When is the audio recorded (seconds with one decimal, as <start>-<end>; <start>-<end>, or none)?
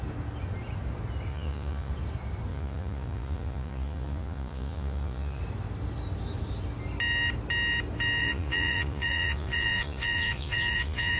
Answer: 0.0-1.3; 1.9-2.5; 5.4-8.2